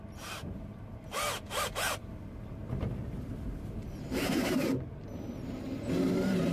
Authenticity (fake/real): fake